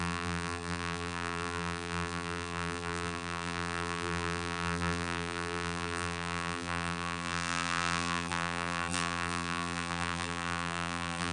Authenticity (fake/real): fake